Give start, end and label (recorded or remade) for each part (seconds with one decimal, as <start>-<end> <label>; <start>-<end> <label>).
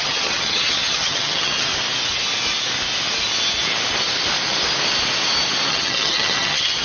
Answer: 0.0-1.7 remade; 1.7-5.7 recorded; 5.7-6.8 remade